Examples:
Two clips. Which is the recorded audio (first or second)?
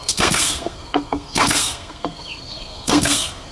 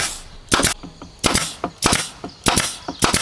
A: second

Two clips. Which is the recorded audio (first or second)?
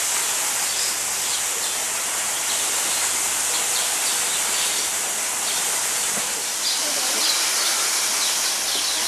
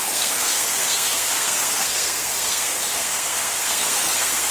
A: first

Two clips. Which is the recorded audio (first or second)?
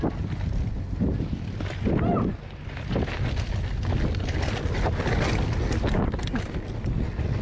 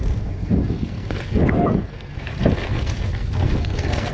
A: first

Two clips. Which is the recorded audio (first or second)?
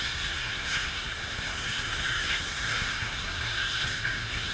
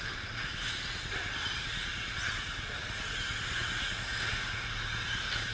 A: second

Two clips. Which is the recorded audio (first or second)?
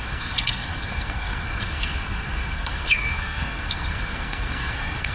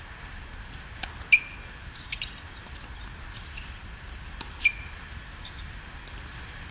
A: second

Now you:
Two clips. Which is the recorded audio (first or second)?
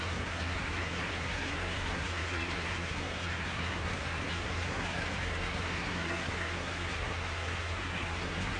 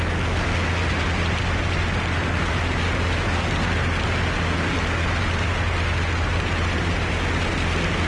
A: second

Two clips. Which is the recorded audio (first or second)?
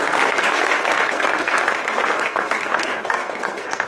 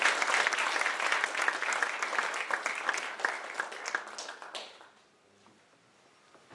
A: second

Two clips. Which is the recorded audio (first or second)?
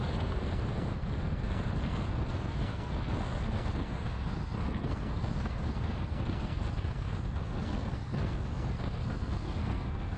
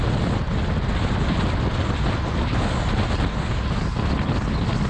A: second